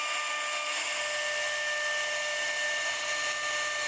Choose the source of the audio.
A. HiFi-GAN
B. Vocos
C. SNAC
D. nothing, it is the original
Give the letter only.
D